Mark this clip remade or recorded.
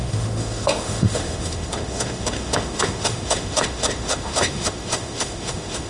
remade